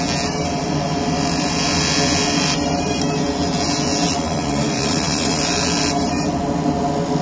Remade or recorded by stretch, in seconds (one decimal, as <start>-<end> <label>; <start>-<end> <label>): 0.0-4.1 recorded; 4.1-5.4 remade; 5.4-7.2 recorded